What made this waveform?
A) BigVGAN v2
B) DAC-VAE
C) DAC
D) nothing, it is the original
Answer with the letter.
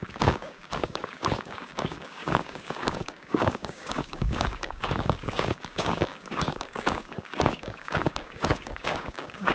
C